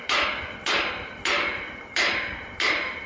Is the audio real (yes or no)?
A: no